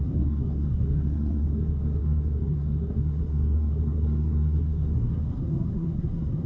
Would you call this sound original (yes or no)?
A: no